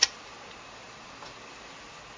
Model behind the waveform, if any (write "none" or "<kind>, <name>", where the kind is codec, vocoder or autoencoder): none